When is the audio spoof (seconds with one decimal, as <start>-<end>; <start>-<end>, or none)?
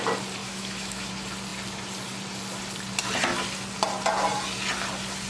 0.4-1.1